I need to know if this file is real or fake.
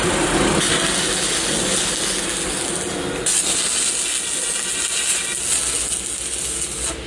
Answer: real